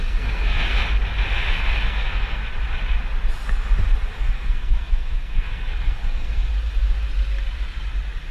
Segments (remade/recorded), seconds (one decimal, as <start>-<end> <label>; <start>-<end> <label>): 0.0-0.8 remade; 0.8-1.3 recorded; 1.3-2.4 remade; 2.4-4.2 recorded; 4.2-6.5 remade; 6.5-8.3 recorded